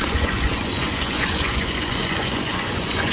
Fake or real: fake